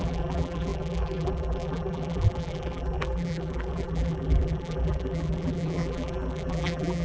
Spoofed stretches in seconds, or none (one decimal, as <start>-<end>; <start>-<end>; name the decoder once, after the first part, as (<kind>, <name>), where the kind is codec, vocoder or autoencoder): 0.0-7.0 (vocoder, BigVGAN v2)